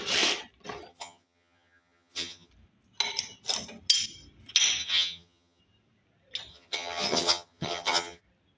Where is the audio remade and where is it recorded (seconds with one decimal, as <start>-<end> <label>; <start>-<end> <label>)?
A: 0.0-0.9 recorded; 0.9-2.5 remade; 2.5-4.8 recorded; 4.8-5.6 remade; 5.6-6.5 recorded; 6.5-8.2 remade; 8.2-8.6 recorded